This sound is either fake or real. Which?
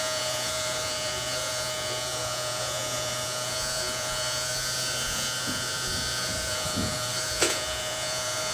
fake